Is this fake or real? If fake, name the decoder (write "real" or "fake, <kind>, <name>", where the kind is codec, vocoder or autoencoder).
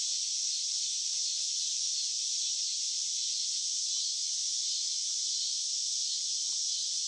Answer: fake, vocoder, BigVGAN v2